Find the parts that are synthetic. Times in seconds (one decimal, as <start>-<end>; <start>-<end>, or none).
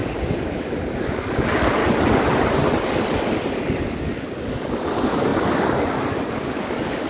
0.0-1.8; 3.5-7.1